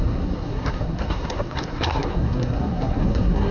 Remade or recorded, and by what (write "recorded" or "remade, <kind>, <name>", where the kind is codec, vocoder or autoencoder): remade, codec, SNAC